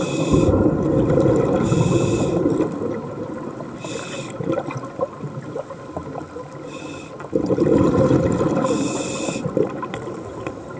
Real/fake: real